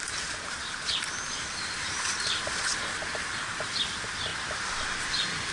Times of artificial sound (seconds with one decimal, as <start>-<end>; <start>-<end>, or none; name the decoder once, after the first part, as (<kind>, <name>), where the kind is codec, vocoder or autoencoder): 0.6-3.3 (vocoder, BigVGAN v2)